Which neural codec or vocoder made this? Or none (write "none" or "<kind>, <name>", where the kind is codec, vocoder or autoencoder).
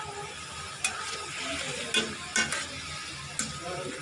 none